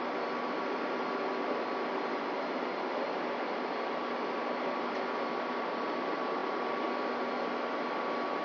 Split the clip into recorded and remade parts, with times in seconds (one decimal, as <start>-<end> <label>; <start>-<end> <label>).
0.0-8.4 recorded